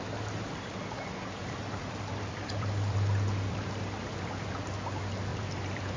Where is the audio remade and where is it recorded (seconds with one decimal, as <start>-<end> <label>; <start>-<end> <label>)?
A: 0.0-1.4 recorded; 1.4-4.5 remade; 4.5-5.3 recorded; 5.3-6.0 remade